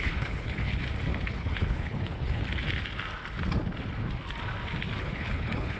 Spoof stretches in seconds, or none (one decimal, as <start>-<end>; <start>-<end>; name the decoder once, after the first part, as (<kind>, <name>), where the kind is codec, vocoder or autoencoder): 0.0-0.7 (codec, HILCodec); 1.3-2.4; 5.0-5.8